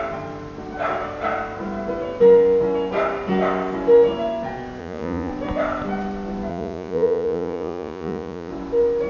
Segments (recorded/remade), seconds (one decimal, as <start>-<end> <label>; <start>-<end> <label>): 0.0-4.8 recorded; 4.8-5.3 remade; 5.3-6.5 recorded; 6.5-8.5 remade; 8.5-9.1 recorded